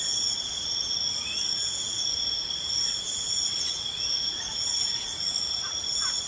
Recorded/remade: remade